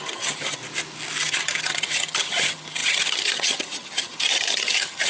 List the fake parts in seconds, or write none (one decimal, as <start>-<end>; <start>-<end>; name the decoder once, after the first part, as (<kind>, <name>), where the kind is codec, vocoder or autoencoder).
0.0-0.6 (vocoder, HiFi-GAN); 1.2-5.1